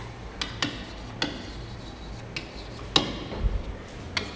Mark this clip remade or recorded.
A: recorded